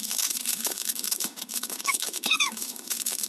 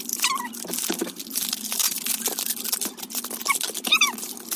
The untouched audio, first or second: second